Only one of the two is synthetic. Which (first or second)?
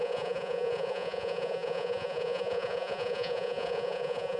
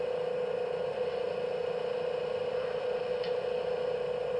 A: first